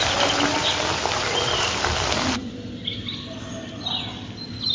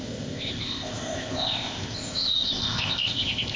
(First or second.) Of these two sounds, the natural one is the first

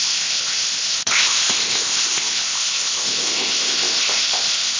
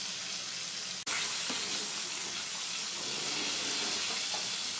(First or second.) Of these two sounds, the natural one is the second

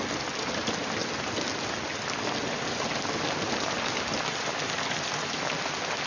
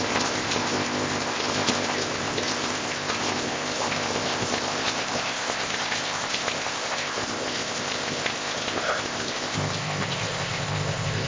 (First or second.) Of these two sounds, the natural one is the first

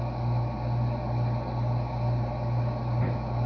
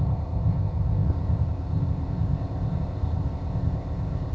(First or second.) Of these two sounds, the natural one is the first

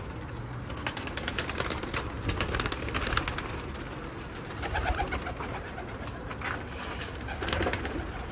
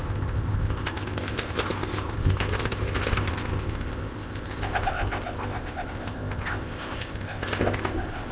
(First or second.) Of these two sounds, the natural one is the first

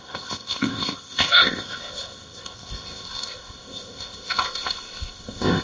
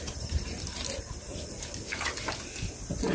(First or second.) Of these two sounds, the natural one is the second